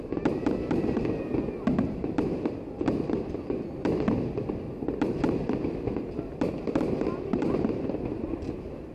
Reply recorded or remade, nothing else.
remade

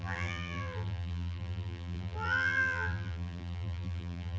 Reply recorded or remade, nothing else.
remade